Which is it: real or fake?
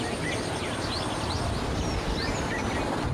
real